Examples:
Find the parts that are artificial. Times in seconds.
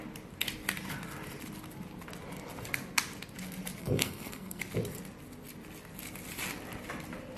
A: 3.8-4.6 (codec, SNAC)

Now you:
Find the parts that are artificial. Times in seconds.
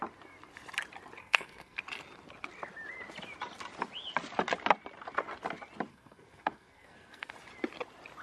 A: 1.2-1.8 (codec, SNAC); 5.9-7.3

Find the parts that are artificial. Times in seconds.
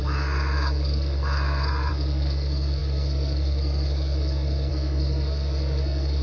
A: 0.0-6.2 (codec, SNAC)